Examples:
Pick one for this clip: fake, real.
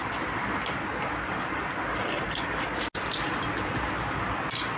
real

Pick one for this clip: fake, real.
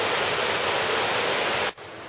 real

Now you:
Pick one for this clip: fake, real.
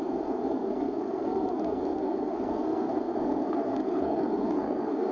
fake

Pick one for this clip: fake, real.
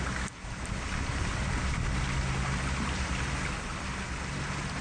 real